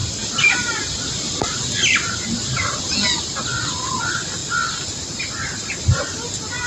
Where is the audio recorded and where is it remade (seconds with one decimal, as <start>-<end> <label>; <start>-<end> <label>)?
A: 0.0-6.7 recorded